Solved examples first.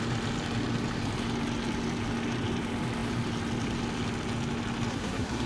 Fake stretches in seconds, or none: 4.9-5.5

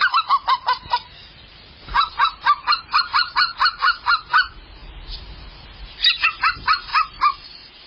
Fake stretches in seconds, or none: 2.2-4.1

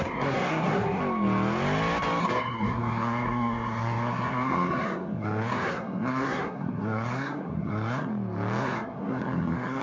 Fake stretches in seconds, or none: 0.0-1.0; 2.2-8.1; 8.6-9.8